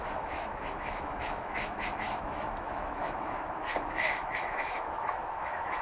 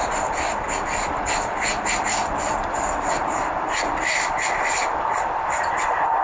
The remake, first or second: first